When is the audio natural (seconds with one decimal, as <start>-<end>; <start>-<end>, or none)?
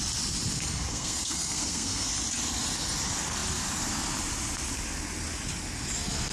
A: 0.0-0.9; 2.1-6.3